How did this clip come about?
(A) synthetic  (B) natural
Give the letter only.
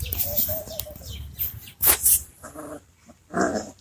B